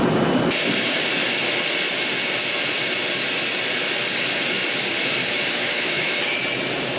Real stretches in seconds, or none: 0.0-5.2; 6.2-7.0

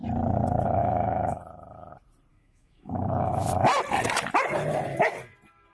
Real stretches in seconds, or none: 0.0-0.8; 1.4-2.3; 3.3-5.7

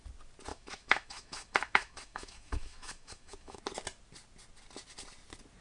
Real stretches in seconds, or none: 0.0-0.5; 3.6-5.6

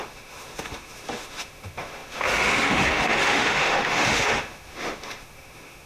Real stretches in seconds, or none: none